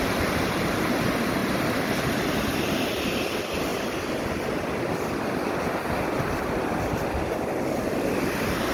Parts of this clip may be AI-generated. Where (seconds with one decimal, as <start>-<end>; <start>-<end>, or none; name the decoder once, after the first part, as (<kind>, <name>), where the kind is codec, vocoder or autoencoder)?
1.4-2.3 (vocoder, BigVGAN v2)